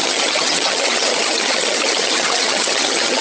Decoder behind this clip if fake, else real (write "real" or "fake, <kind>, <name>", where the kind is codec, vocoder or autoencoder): fake, vocoder, HiFi-GAN